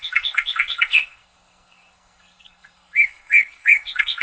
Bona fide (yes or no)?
no